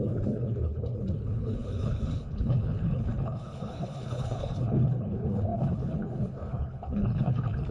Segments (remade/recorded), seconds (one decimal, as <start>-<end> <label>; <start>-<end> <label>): 0.0-7.7 remade